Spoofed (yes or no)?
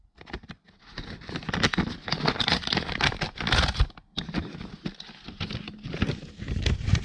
no